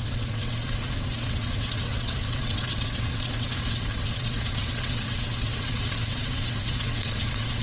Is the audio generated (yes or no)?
yes